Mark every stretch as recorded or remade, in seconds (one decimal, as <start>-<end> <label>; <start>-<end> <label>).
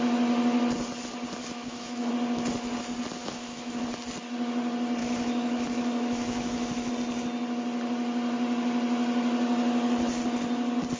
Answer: 0.0-1.4 recorded; 1.4-2.1 remade; 2.1-3.2 recorded; 3.2-3.8 remade; 3.8-5.0 recorded; 5.0-6.9 remade; 6.9-11.0 recorded